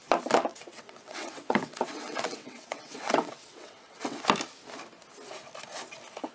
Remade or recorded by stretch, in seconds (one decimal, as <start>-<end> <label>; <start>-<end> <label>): 0.0-0.5 recorded; 0.5-4.2 remade; 4.2-6.3 recorded